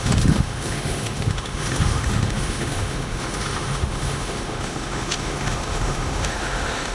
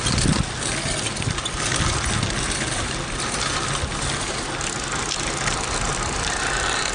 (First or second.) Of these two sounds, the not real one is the first